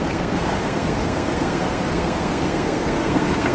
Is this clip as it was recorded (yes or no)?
no